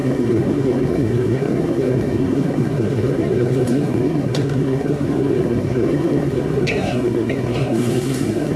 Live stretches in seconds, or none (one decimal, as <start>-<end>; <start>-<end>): none